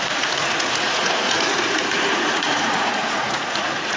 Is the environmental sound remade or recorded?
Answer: remade